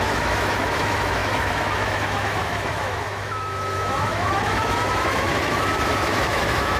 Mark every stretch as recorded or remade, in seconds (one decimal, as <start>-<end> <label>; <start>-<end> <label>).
0.0-6.8 remade